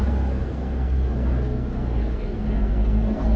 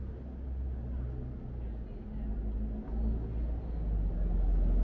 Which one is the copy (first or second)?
first